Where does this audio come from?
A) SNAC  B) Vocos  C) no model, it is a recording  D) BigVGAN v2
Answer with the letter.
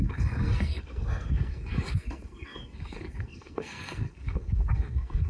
A